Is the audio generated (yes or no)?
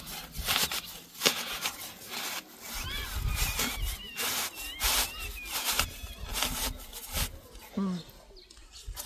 no